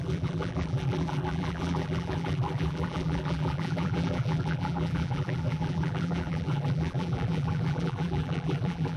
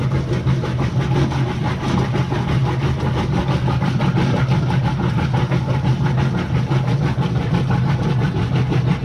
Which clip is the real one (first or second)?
second